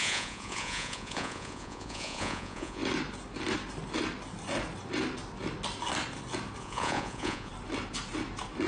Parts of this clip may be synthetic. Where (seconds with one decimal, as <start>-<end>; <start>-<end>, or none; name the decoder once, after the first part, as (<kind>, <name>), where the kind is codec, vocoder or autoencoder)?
0.0-2.8 (vocoder, Vocos); 6.6-7.5

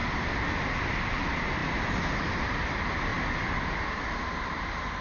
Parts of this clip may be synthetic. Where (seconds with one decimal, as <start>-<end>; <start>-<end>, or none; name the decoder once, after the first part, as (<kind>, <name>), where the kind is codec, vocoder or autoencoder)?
3.1-3.6 (vocoder, BigVGAN v2)

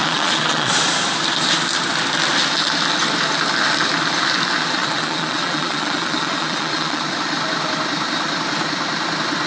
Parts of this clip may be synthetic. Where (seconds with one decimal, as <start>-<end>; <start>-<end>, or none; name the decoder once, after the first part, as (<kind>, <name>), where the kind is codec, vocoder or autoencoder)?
0.0-0.7 (vocoder, Vocos); 4.8-7.0